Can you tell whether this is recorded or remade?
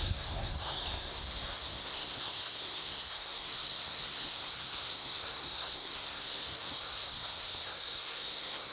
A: remade